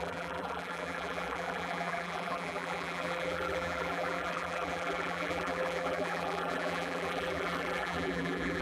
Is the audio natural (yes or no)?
no